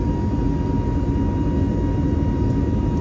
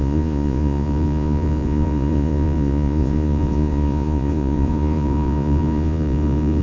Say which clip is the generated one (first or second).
second